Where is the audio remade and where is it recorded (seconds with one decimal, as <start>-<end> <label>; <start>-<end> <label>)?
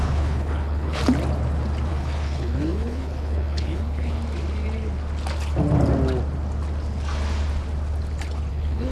0.0-1.0 remade; 1.0-1.9 recorded; 1.9-4.2 remade; 4.2-8.5 recorded; 8.5-8.9 remade